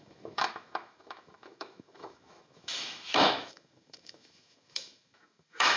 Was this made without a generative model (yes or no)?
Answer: no